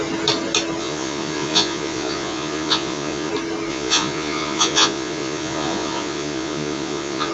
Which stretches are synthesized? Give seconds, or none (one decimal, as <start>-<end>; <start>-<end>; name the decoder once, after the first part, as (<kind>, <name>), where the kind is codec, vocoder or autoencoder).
0.8-3.3 (vocoder, Vocos); 3.7-7.3